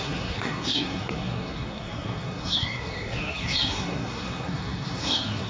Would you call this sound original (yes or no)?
no